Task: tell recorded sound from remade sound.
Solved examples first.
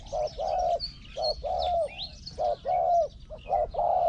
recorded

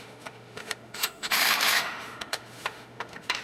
remade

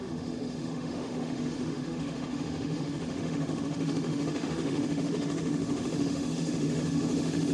remade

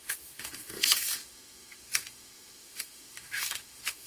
remade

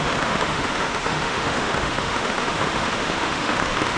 remade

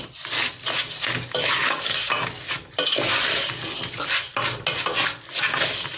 recorded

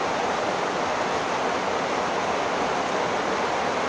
recorded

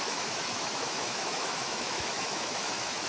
remade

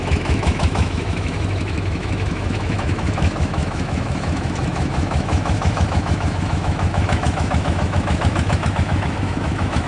remade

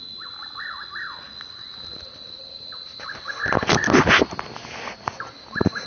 recorded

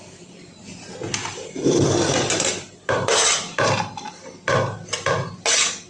recorded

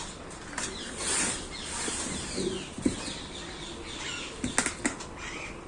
recorded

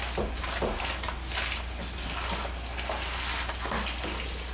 recorded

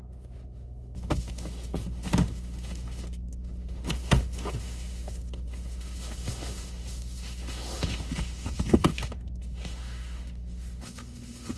remade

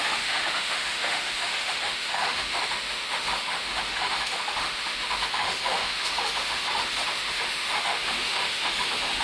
remade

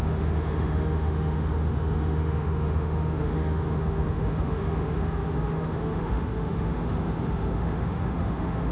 remade